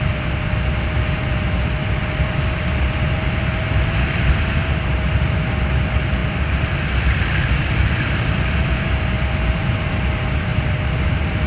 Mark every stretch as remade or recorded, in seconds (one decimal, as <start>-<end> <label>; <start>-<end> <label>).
0.0-11.5 recorded